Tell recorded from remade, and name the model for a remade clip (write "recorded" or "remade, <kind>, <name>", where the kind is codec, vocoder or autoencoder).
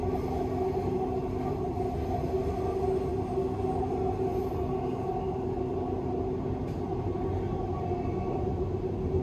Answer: recorded